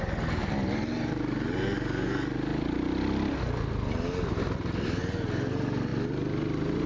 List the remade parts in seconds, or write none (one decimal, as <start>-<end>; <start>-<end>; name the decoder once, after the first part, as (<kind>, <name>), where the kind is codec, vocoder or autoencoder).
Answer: none